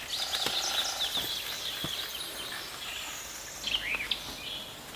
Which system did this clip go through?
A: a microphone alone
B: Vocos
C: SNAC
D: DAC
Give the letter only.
A